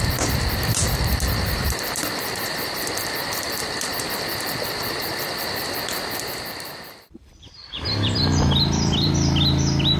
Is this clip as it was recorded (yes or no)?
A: no